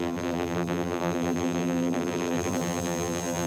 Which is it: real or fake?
fake